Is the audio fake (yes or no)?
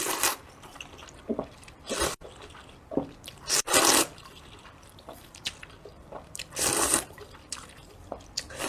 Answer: yes